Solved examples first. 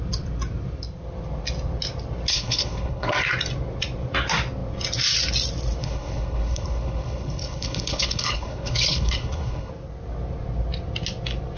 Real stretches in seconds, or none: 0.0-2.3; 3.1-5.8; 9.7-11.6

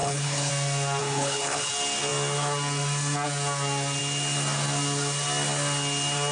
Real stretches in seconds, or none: 0.5-1.0; 1.7-6.3

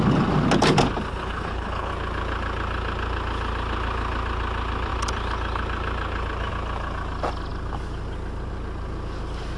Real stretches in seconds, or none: 0.0-1.1; 1.9-9.6

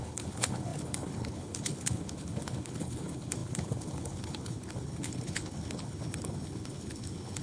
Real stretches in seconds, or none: none

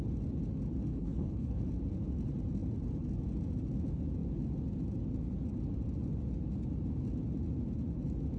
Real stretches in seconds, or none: 0.0-0.9; 1.6-8.4

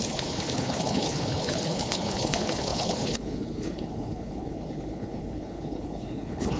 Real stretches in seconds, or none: none

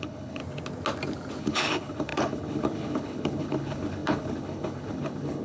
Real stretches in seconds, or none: 0.4-1.4

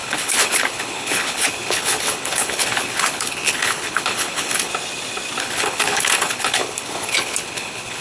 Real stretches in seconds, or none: 4.7-5.4